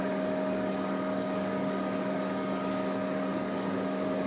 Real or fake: fake